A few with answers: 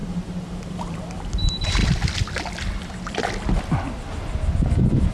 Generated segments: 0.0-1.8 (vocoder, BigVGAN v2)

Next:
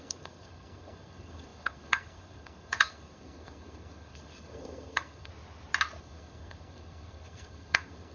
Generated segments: 0.0-5.3 (codec, SNAC); 6.0-8.1

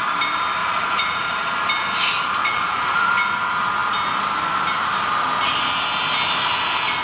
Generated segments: 0.6-1.5 (vocoder, Vocos); 2.4-3.1

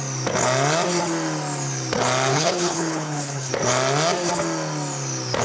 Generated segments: 2.3-3.5 (codec, HILCodec)

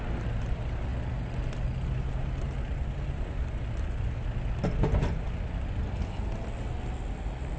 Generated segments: none

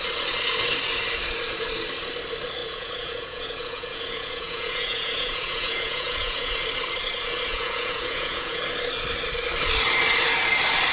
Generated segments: 2.6-6.5 (vocoder, Vocos); 7.5-8.6

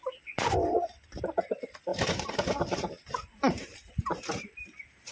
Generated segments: 0.0-1.5 (vocoder, BigVGAN v2); 1.9-5.1